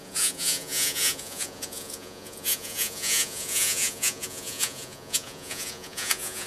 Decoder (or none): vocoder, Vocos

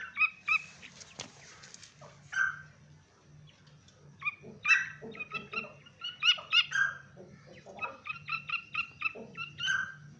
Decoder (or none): none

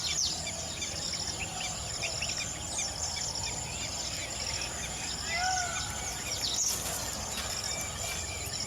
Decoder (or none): none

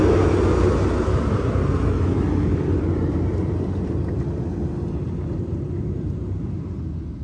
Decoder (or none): none